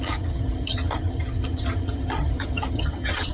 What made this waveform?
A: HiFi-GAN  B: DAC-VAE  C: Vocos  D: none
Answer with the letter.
A